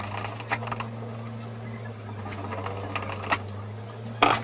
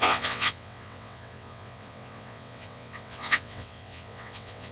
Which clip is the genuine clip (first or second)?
first